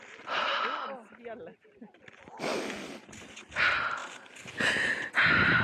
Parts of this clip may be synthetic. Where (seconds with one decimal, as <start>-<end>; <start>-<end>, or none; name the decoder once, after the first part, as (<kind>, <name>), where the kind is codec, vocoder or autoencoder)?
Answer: none